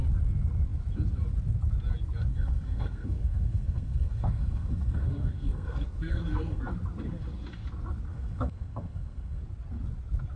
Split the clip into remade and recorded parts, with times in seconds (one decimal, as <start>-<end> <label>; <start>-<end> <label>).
0.0-2.3 recorded; 2.3-6.6 remade; 6.6-8.1 recorded; 8.1-9.4 remade; 9.4-10.4 recorded

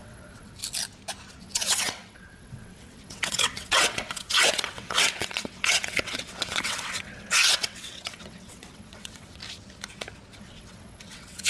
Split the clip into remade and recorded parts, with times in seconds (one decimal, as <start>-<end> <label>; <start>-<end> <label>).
0.0-0.6 remade; 0.6-1.4 recorded; 1.4-9.4 remade; 9.4-10.4 recorded; 10.4-11.5 remade

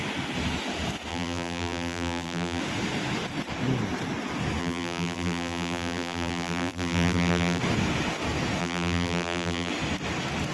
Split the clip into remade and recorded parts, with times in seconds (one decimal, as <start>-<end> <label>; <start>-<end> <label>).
0.0-1.1 recorded; 1.1-2.6 remade; 2.6-4.6 recorded; 4.6-7.6 remade; 7.6-8.6 recorded; 8.6-9.7 remade; 9.7-10.5 recorded

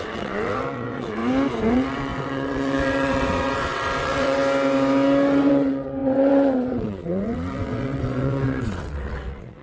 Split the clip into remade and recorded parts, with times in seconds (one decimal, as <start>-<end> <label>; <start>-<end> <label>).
0.0-1.2 remade; 1.2-1.7 recorded; 1.7-4.4 remade; 4.4-5.5 recorded; 5.5-9.6 remade

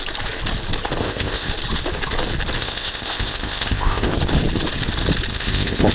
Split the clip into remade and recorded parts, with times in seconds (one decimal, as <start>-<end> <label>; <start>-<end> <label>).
0.0-1.0 recorded; 1.0-1.5 remade; 1.5-2.6 recorded; 2.6-4.1 remade; 4.1-5.3 recorded; 5.3-5.9 remade

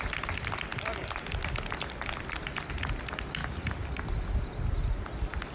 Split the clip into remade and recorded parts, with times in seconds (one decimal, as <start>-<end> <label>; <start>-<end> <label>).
0.0-5.5 recorded

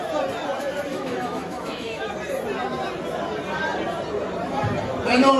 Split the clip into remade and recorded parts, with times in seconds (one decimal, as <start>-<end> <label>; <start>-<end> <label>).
0.0-0.9 recorded; 0.9-2.1 remade; 2.1-5.4 recorded